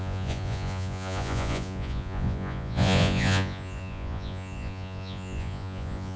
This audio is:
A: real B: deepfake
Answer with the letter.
B